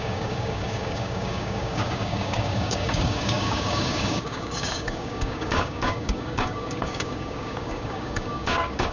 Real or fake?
fake